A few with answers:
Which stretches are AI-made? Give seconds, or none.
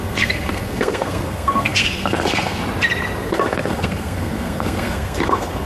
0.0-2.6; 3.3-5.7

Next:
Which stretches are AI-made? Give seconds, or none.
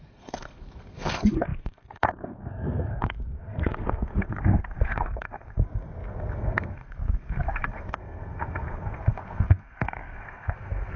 0.0-11.0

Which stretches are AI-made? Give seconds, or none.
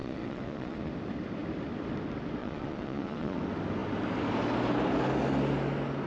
0.0-0.9; 2.4-3.4